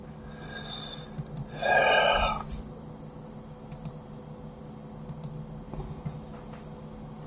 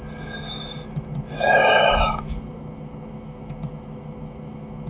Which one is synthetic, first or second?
second